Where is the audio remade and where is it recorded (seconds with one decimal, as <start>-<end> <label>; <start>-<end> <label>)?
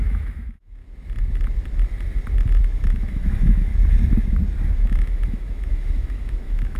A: 0.0-0.8 remade; 0.8-2.6 recorded; 2.6-3.7 remade; 3.7-4.7 recorded; 4.7-6.8 remade